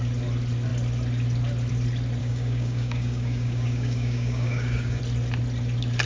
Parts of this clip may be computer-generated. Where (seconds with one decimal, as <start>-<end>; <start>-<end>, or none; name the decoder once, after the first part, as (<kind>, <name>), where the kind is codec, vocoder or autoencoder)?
2.2-5.0 (codec, DAC)